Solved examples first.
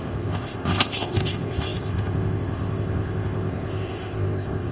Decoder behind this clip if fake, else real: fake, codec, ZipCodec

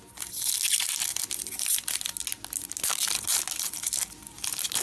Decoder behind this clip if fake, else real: real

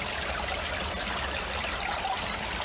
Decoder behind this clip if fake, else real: real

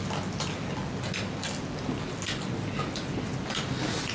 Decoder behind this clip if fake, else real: real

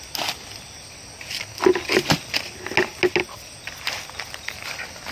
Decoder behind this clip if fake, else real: real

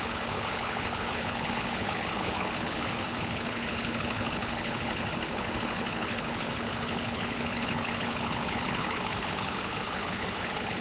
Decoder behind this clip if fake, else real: fake, codec, HILCodec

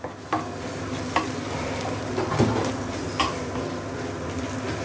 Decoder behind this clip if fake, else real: real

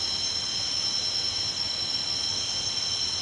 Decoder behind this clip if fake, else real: real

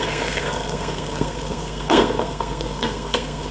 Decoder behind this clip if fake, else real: fake, codec, SNAC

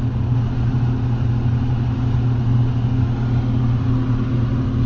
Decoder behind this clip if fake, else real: real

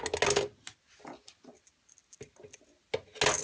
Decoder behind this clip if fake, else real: real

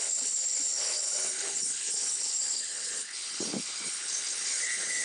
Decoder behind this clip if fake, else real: fake, codec, HILCodec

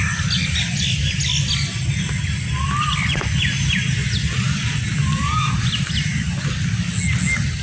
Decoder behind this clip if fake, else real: real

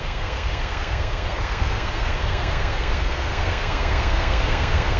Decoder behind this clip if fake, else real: fake, codec, SNAC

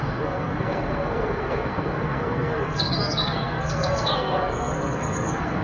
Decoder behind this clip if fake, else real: fake, codec, SNAC